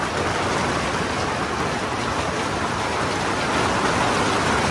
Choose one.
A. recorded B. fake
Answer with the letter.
A